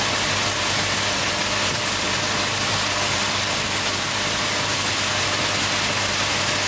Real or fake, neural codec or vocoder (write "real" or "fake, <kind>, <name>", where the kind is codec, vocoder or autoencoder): real